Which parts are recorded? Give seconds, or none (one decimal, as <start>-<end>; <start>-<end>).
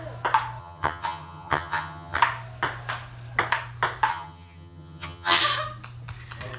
0.0-0.6; 2.2-4.1; 5.4-6.6